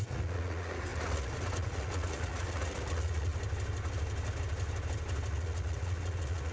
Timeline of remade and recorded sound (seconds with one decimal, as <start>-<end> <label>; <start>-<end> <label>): 0.0-3.3 remade; 3.3-5.3 recorded; 5.3-6.5 remade